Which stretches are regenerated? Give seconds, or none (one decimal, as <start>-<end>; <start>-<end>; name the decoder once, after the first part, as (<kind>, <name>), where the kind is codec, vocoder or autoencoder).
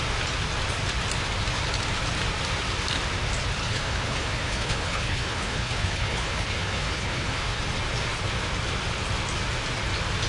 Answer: 3.6-7.6 (codec, HILCodec)